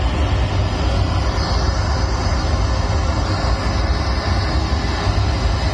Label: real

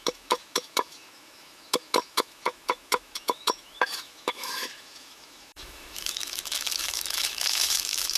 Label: fake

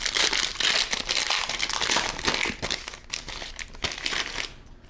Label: real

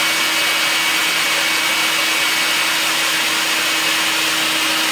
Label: real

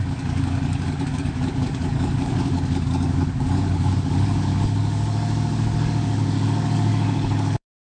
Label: fake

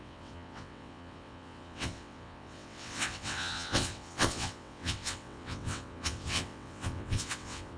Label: fake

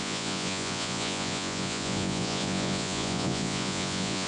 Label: fake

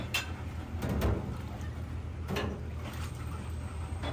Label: real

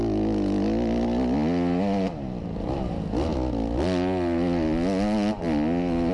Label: real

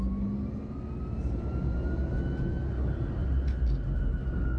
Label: real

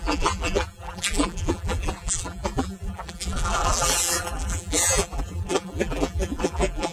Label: fake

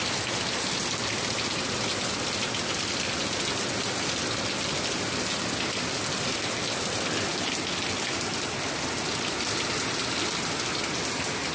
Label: real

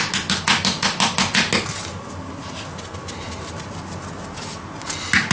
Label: real